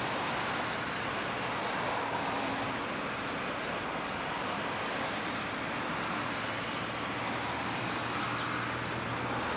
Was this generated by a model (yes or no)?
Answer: no